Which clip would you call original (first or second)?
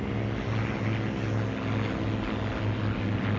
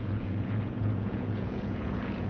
first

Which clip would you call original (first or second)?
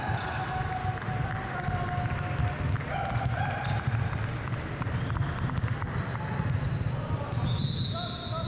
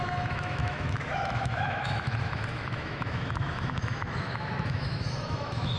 first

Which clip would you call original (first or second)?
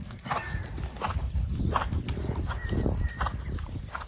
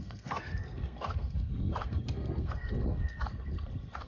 first